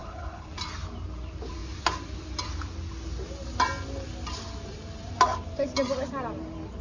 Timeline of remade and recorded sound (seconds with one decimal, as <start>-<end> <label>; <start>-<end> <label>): 0.0-0.5 remade; 0.5-6.8 recorded